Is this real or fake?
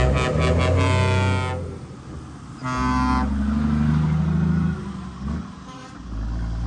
real